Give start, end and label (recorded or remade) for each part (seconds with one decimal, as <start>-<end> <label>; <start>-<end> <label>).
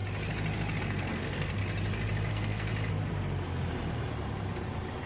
0.0-0.8 recorded; 0.8-1.6 remade; 1.6-2.3 recorded; 2.3-2.7 remade; 2.7-5.1 recorded